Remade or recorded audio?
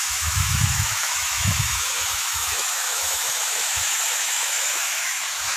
remade